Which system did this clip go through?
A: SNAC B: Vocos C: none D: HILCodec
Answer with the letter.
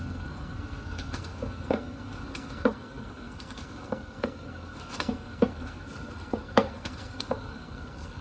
A